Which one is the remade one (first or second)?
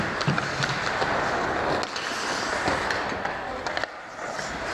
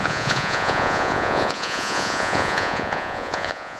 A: second